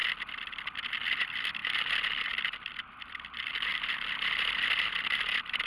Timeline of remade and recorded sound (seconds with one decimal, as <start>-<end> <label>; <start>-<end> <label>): 0.0-1.2 recorded; 1.2-5.7 remade